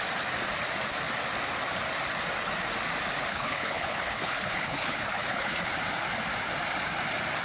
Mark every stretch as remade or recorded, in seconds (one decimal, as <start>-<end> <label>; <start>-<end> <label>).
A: 0.0-3.3 recorded; 3.3-5.7 remade; 5.7-7.4 recorded